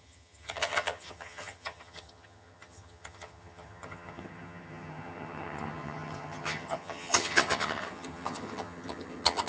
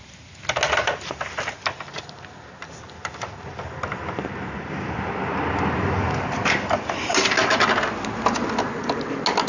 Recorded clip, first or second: second